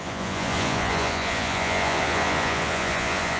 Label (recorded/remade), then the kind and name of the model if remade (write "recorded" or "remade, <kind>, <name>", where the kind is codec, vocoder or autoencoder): remade, vocoder, Vocos